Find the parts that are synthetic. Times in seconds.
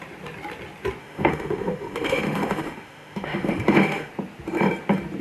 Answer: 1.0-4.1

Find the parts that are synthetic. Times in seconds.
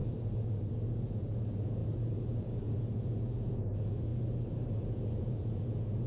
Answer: 0.0-4.1; 4.7-6.1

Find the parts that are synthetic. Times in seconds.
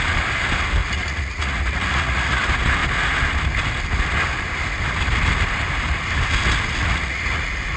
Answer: 0.8-2.4; 6.8-7.8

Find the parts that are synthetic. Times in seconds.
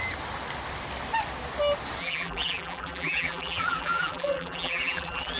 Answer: 2.0-5.4